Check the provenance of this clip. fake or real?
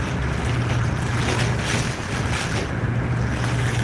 real